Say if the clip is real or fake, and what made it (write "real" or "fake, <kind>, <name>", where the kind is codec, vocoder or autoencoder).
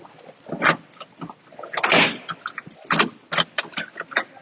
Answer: real